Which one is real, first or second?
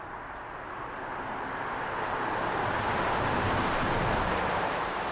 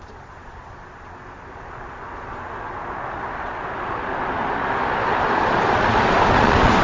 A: first